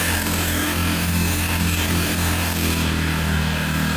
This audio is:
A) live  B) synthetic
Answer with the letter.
B